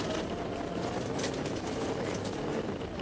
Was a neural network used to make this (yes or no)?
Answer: no